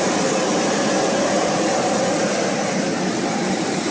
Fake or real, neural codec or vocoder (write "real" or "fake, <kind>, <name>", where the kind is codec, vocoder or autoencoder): fake, vocoder, BigVGAN v2